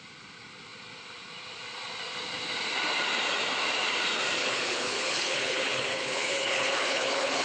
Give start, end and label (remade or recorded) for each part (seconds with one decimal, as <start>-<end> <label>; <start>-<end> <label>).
0.0-4.4 recorded; 4.4-7.4 remade